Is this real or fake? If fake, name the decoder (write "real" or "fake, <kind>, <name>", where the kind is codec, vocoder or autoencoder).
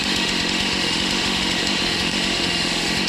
fake, autoencoder, DAC-VAE